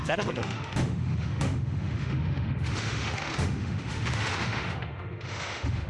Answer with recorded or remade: remade